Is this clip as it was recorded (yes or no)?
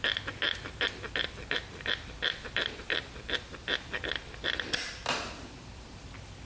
no